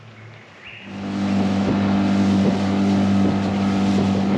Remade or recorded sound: recorded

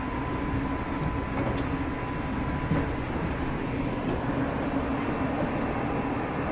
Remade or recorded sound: recorded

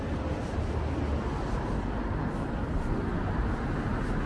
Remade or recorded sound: recorded